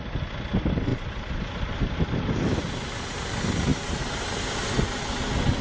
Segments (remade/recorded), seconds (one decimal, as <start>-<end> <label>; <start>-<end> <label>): 0.0-0.9 recorded; 0.9-3.3 remade; 3.3-3.7 recorded; 3.7-5.0 remade; 5.0-5.6 recorded